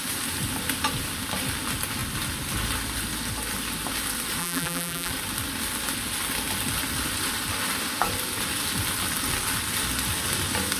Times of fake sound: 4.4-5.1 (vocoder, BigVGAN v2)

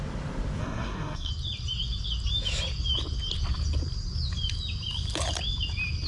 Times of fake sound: 0.6-1.3 (codec, SNAC)

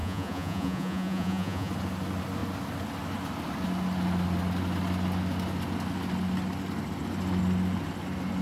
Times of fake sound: 0.0-1.7 (vocoder, Vocos)